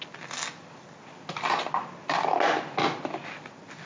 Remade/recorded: recorded